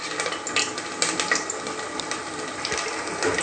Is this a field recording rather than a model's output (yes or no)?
yes